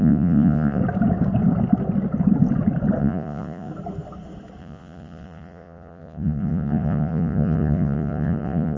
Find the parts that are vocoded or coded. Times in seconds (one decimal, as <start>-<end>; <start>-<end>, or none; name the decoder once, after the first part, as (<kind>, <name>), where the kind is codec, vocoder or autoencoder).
0.0-0.8 (vocoder, Vocos); 3.0-3.7; 4.6-8.8